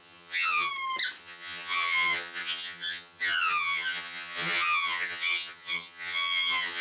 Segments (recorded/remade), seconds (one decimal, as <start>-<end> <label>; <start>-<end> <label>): 0.0-0.7 remade; 0.7-1.2 recorded; 1.2-6.8 remade